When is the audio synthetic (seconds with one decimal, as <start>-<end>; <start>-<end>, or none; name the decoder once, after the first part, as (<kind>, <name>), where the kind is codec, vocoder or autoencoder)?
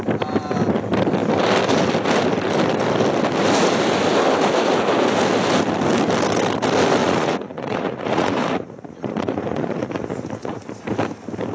7.0-10.7 (vocoder, Vocos)